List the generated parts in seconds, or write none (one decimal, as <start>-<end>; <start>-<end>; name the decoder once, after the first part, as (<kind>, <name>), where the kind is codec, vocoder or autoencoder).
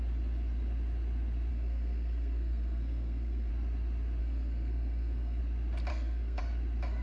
1.5-3.5 (codec, SNAC); 4.2-5.4; 5.9-6.4